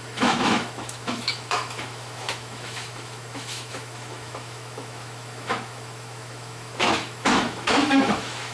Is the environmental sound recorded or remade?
remade